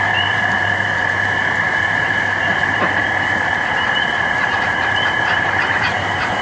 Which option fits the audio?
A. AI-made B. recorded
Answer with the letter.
A